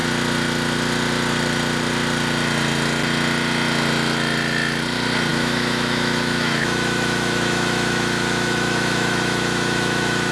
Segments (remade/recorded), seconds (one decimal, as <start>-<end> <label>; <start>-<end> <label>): 0.0-5.3 recorded; 5.3-10.3 remade